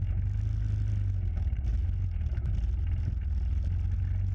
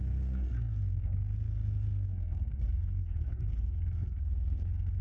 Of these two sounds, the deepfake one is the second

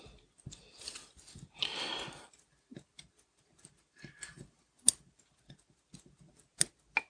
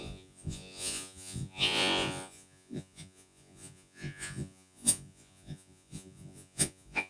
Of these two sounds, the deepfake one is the second